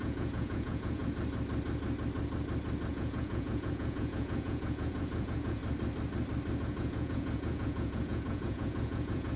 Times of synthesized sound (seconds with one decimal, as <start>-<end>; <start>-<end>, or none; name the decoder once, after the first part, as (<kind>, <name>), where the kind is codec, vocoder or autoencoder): 0.0-1.0 (vocoder, Vocos); 2.9-5.6; 6.6-9.4